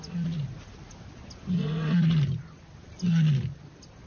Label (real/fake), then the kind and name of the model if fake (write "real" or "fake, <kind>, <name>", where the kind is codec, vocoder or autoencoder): real